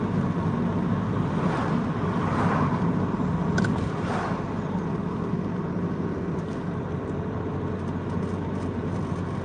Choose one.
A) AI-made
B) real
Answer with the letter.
B